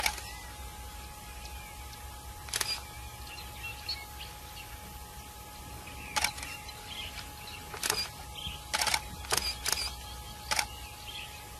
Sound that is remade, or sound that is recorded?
recorded